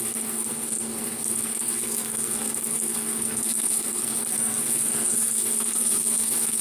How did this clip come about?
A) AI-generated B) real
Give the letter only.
A